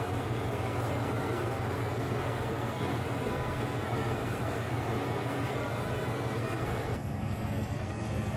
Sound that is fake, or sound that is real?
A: fake